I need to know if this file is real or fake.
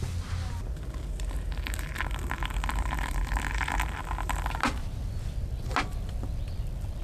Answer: real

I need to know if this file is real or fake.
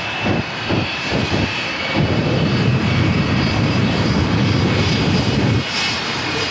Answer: fake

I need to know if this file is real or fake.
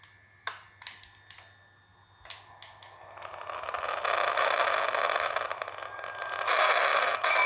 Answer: real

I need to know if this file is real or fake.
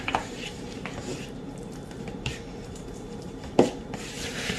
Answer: fake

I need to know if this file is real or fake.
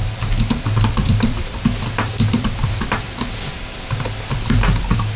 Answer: fake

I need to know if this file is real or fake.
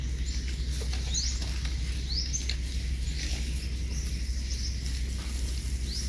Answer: real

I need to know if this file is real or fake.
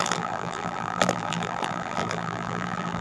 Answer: fake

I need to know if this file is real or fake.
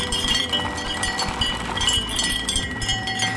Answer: fake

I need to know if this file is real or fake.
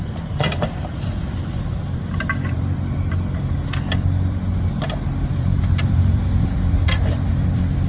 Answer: fake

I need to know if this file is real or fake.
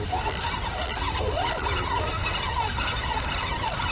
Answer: real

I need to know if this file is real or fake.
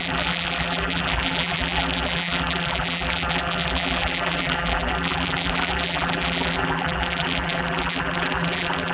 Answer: fake